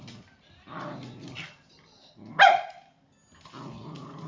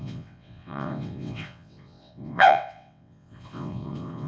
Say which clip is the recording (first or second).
first